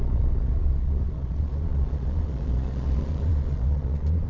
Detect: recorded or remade remade